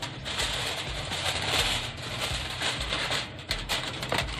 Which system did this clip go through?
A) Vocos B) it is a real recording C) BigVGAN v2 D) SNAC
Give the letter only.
C